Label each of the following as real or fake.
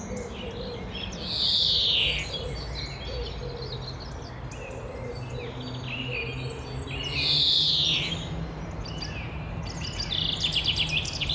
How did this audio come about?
real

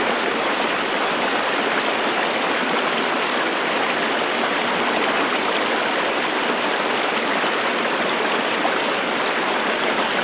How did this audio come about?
real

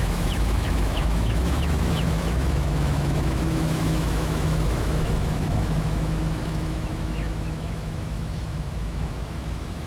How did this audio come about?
fake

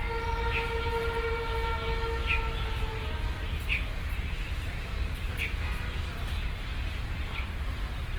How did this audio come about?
real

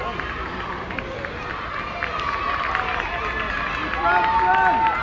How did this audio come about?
real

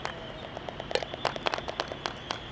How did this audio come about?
real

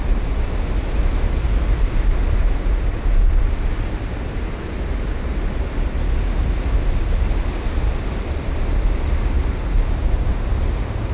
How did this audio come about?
real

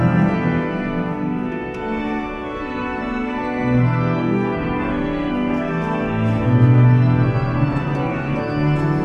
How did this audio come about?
fake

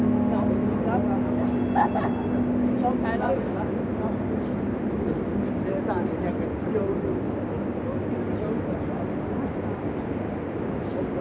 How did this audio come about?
real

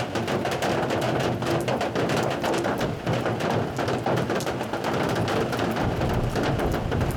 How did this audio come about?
fake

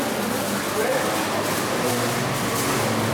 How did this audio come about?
real